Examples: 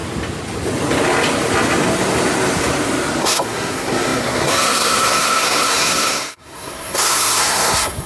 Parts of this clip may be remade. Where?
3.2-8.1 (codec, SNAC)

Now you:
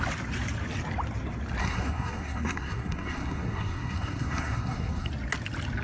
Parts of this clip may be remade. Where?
1.6-5.1 (codec, SNAC)